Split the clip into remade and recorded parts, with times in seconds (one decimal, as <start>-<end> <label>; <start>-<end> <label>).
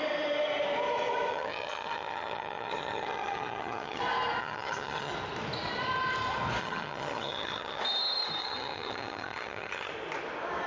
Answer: 0.0-1.3 recorded; 1.3-4.0 remade; 4.0-4.4 recorded; 4.4-5.1 remade; 5.1-6.6 recorded; 6.6-7.8 remade; 7.8-8.4 recorded; 8.4-9.9 remade; 9.9-10.7 recorded